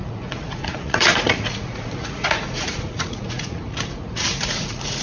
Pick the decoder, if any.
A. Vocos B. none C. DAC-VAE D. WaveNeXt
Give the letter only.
A